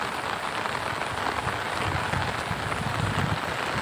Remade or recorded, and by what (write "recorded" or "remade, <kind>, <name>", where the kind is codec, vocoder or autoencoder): recorded